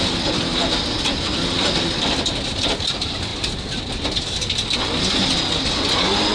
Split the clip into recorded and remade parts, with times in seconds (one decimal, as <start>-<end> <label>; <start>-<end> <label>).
0.0-6.3 recorded